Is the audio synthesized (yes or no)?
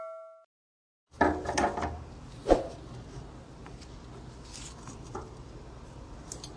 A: no